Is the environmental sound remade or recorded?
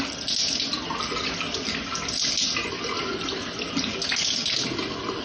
recorded